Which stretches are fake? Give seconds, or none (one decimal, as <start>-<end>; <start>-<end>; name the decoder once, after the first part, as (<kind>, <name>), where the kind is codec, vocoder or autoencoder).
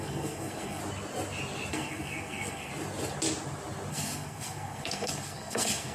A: 0.0-0.8 (codec, SNAC); 1.7-2.7; 3.9-5.9